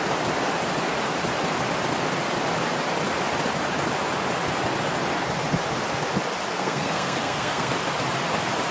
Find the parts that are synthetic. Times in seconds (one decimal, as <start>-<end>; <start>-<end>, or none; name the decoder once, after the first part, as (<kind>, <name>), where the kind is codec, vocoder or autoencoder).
6.5-7.7 (codec, SNAC)